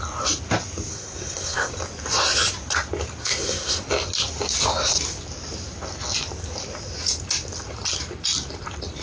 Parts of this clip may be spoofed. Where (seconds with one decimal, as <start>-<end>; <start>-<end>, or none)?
0.9-1.7; 3.2-3.8